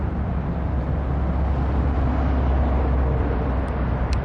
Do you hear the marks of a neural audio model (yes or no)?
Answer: no